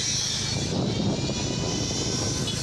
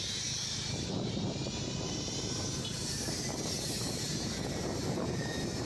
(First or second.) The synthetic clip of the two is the second